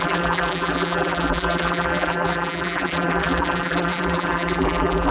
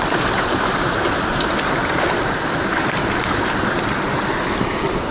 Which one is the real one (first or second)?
second